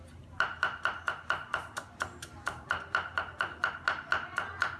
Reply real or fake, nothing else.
real